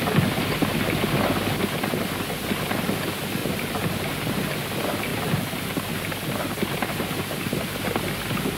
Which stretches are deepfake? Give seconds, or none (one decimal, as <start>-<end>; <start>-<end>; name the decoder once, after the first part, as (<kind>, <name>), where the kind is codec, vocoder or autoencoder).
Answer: 3.4-4.3 (vocoder, BigVGAN v2); 5.1-7.8